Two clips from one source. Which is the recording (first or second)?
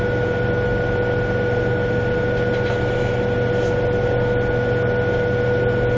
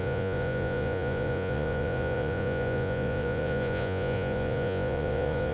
first